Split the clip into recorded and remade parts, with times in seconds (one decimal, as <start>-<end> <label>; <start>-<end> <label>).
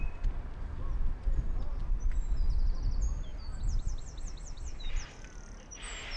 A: 0.0-6.2 remade